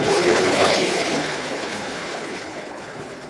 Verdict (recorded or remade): remade